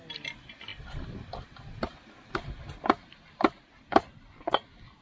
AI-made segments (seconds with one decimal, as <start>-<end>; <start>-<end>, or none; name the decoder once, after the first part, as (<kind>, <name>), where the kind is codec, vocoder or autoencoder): none